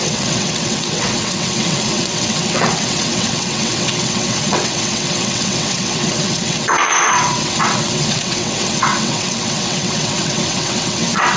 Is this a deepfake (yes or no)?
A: yes